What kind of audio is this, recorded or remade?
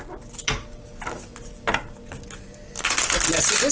recorded